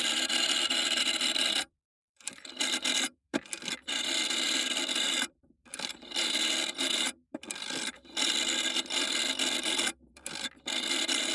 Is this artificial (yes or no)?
yes